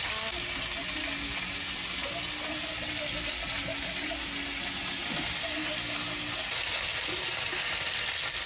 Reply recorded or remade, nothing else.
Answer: recorded